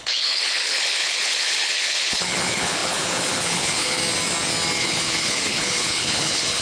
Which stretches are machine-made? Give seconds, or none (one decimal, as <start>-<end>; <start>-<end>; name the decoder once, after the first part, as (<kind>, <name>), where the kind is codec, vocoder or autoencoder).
0.0-4.0 (codec, HILCodec); 4.8-6.6